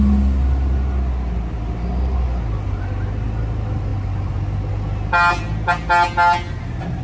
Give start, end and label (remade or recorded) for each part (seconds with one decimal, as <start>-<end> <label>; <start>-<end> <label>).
0.0-7.0 recorded